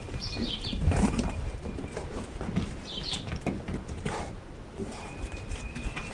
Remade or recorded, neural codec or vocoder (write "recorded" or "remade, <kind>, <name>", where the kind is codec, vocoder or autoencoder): remade, vocoder, BigVGAN v2